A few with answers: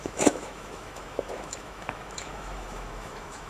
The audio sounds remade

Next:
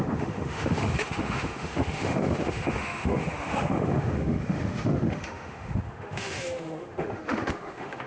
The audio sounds remade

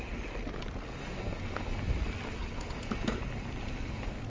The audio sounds recorded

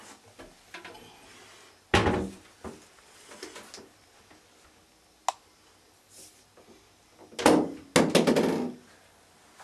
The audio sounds recorded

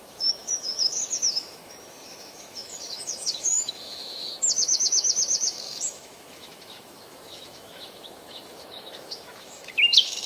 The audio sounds remade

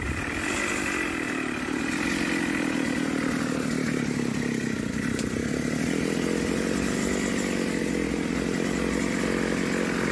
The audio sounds recorded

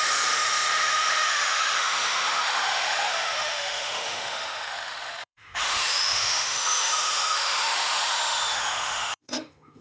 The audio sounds remade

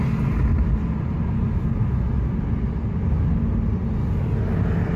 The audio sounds recorded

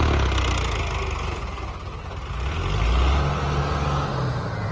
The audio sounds recorded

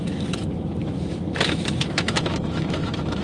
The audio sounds remade